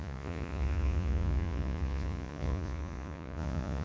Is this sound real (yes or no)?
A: no